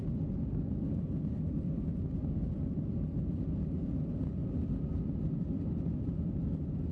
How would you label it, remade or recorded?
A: recorded